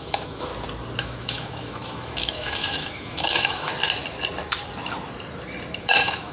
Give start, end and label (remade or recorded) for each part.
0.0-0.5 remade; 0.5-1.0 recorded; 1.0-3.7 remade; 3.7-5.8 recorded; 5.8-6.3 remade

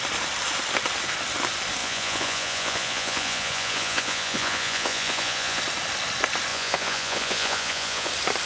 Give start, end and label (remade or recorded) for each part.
0.0-1.8 recorded; 1.8-5.6 remade; 5.6-6.5 recorded; 6.5-8.1 remade; 8.1-8.5 recorded

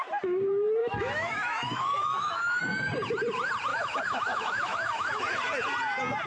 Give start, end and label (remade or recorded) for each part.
0.0-0.8 recorded; 0.8-2.6 remade; 2.6-3.7 recorded; 3.7-5.2 remade; 5.2-6.3 recorded

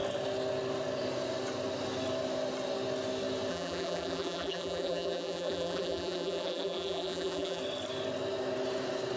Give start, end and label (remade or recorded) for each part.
0.0-3.5 recorded; 3.5-7.6 remade; 7.6-9.2 recorded

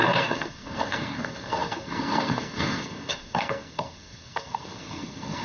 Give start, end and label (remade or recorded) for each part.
0.0-5.4 remade

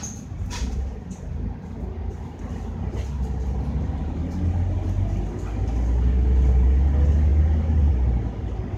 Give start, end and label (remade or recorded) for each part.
0.0-8.8 recorded

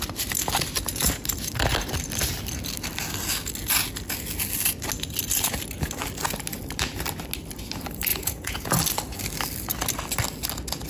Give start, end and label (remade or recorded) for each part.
0.0-8.1 recorded; 8.1-8.7 remade; 8.7-10.9 recorded